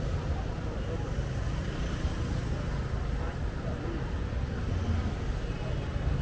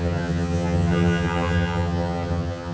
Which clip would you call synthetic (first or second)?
second